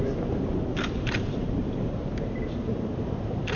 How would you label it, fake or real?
fake